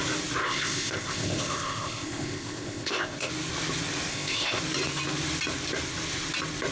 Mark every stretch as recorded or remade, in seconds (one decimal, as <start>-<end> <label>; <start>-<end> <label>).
0.0-0.4 recorded; 0.4-3.3 remade; 3.3-4.1 recorded; 4.1-4.6 remade; 4.6-6.7 recorded